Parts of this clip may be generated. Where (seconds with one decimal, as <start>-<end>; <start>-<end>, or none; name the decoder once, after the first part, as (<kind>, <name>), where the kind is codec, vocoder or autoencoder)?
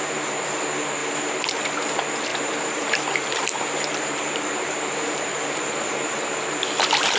1.0-1.6 (vocoder, BigVGAN v2); 2.3-6.5